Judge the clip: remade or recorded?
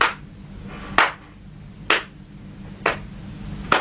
recorded